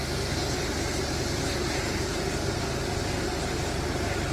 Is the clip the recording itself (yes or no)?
yes